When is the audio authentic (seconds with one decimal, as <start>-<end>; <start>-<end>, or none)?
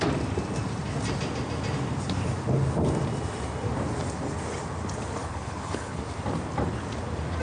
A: 0.0-5.2; 6.0-7.4